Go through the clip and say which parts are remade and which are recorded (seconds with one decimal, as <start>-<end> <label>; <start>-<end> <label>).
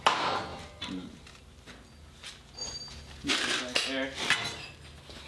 0.0-0.5 recorded; 0.5-1.3 remade; 1.3-2.6 recorded; 2.6-3.3 remade; 3.3-5.3 recorded